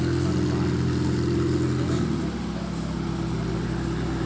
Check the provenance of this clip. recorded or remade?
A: recorded